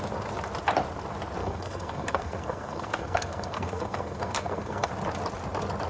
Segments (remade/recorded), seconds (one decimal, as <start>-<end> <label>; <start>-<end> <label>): 0.0-1.4 recorded; 1.4-4.9 remade; 4.9-5.9 recorded

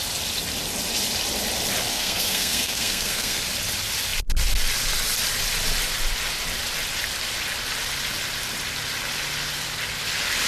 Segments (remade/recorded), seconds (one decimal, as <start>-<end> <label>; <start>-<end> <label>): 0.0-1.9 recorded; 1.9-3.4 remade; 3.4-10.5 recorded

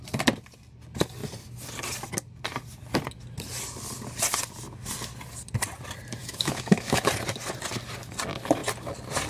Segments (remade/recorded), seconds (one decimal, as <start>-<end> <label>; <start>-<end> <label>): 0.0-6.2 recorded; 6.2-7.1 remade; 7.1-9.3 recorded

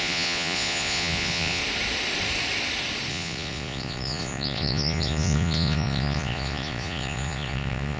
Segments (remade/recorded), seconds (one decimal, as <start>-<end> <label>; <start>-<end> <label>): 0.0-1.6 remade; 1.6-3.1 recorded; 3.1-8.0 remade

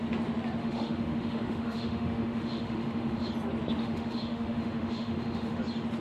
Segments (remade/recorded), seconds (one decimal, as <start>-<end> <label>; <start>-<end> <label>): 0.0-0.6 recorded; 0.6-3.3 remade; 3.3-3.8 recorded; 3.8-5.6 remade; 5.6-6.0 recorded

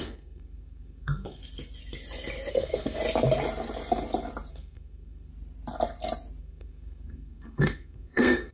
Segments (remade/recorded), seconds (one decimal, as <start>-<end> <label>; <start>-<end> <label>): 0.0-1.4 remade; 1.4-2.5 recorded; 2.5-3.0 remade; 3.0-4.5 recorded; 4.5-5.3 remade; 5.3-6.4 recorded; 6.4-8.5 remade

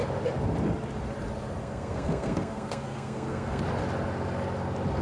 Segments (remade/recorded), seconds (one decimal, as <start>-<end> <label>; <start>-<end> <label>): 0.0-1.6 recorded; 1.6-3.6 remade; 3.6-5.0 recorded